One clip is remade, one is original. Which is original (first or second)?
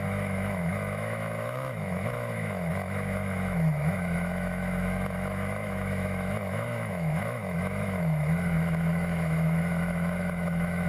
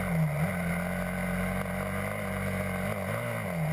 second